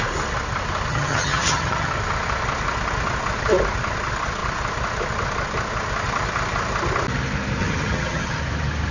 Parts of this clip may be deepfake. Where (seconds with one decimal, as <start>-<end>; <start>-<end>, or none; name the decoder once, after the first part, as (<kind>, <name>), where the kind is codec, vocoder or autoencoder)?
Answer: 0.9-1.9 (vocoder, HiFi-GAN); 7.6-8.4